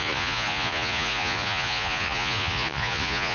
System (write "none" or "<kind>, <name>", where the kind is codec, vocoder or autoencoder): vocoder, Vocos